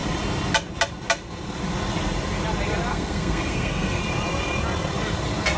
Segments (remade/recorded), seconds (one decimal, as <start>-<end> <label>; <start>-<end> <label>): 0.0-2.9 recorded; 2.9-4.0 remade; 4.0-5.6 recorded